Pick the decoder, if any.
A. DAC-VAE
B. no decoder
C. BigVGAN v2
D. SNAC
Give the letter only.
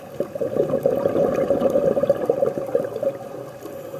B